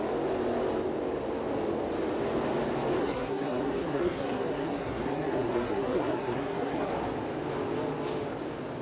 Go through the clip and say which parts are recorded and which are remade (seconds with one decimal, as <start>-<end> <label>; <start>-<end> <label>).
0.0-3.0 recorded; 3.0-6.9 remade; 6.9-8.8 recorded